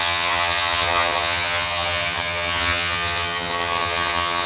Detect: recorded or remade remade